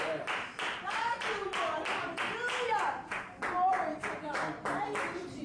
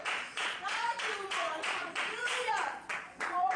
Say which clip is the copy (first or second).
second